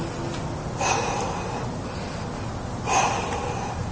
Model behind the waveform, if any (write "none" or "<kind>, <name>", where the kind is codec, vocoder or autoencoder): none